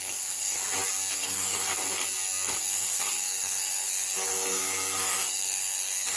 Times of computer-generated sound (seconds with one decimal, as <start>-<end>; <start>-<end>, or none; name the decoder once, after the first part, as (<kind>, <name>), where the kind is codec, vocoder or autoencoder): 0.0-0.6 (codec, SNAC); 1.1-1.7; 2.6-6.2